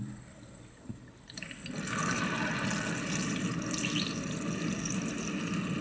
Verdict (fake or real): fake